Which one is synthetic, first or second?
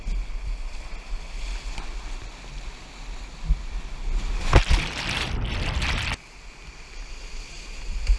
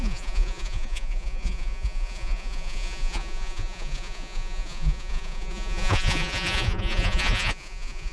second